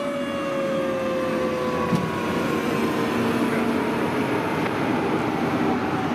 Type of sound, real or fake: real